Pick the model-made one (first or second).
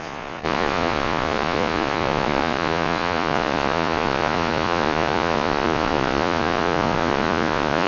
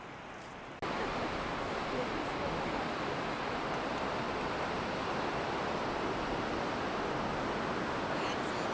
first